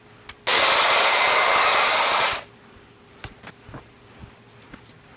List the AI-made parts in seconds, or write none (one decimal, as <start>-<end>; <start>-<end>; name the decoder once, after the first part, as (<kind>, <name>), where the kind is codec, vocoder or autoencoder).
none